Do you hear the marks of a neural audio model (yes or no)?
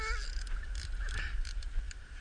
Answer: no